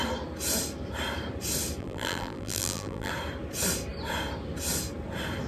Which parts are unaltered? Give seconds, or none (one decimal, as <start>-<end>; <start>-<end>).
0.0-1.8; 3.1-5.5

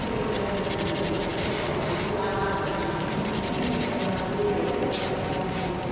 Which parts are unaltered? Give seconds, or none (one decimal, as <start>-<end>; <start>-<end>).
0.0-5.9